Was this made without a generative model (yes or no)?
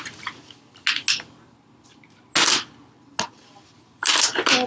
yes